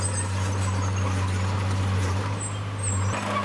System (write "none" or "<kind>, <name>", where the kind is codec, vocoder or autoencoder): none